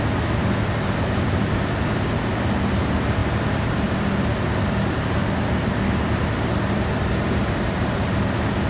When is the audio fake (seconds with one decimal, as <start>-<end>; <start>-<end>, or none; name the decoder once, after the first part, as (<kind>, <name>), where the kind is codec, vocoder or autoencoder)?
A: 3.2-5.7 (vocoder, BigVGAN v2); 7.0-8.7